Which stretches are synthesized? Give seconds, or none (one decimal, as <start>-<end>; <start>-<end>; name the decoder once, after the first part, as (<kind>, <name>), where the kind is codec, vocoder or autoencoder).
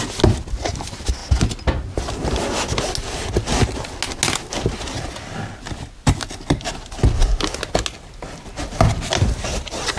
none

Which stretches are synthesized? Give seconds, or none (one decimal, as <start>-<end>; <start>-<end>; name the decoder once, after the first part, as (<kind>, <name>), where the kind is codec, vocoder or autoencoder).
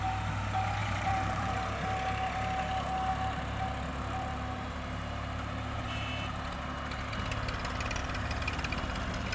0.8-1.5 (vocoder, BigVGAN v2); 3.9-6.1; 8.0-8.7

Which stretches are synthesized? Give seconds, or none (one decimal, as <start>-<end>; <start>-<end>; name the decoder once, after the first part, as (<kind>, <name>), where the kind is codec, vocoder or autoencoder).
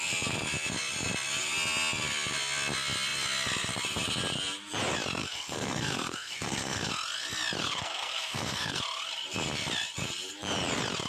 5.2-6.9 (codec, SNAC); 7.6-8.8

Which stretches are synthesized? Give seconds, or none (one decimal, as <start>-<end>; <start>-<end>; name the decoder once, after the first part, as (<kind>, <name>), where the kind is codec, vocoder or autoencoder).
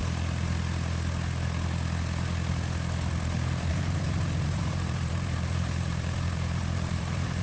3.7-7.4 (vocoder, BigVGAN v2)